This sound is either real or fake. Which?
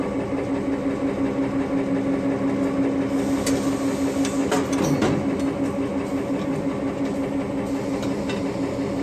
real